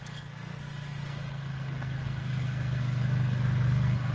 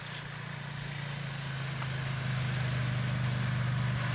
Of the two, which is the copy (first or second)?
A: first